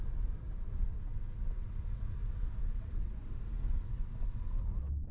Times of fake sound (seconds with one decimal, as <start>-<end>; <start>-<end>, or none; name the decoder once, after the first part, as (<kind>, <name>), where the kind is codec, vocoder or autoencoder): 0.8-3.1 (vocoder, WaveNeXt); 3.7-5.1

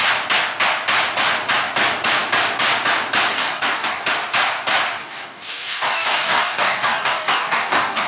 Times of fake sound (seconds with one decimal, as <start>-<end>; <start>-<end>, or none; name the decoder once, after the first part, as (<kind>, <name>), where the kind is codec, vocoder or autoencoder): 3.3-4.0 (codec, DAC); 5.0-8.1

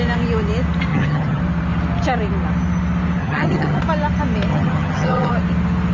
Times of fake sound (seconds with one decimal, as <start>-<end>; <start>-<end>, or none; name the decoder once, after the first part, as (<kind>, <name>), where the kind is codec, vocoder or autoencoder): 0.9-1.4 (vocoder, HiFi-GAN); 3.2-3.8; 4.5-5.3

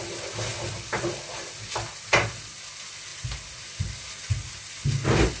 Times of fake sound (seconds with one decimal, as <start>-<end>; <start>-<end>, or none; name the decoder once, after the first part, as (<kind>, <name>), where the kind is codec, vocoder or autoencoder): none

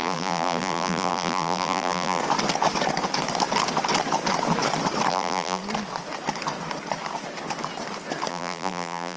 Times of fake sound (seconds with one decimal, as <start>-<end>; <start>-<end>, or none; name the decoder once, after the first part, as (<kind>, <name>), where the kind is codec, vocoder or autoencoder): 0.0-2.2 (vocoder, BigVGAN v2); 5.1-5.6; 8.3-9.2

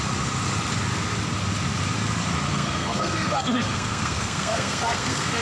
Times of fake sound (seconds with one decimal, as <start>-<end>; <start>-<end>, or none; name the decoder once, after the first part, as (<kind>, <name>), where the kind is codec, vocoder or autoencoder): 2.5-5.4 (codec, SNAC)

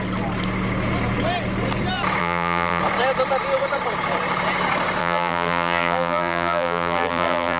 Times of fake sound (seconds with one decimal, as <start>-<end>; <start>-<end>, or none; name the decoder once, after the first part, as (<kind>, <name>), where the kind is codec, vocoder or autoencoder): 2.2-2.8 (vocoder, BigVGAN v2); 5.0-7.6